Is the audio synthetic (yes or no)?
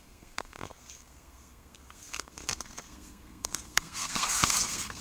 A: yes